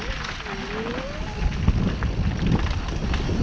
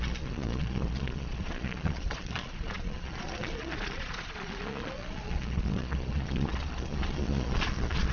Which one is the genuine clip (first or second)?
first